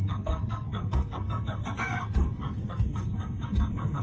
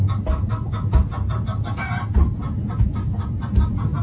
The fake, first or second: first